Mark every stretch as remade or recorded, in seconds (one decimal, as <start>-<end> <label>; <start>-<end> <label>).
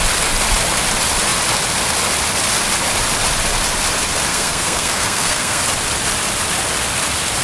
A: 0.0-4.3 recorded; 4.3-5.6 remade; 5.6-7.4 recorded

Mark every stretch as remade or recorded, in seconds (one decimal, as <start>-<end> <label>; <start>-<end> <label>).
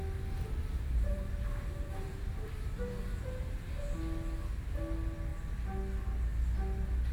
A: 0.0-0.6 recorded; 0.6-3.4 remade; 3.4-7.1 recorded